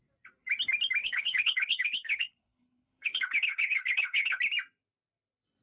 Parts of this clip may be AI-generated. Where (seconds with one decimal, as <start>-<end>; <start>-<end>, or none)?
1.0-4.4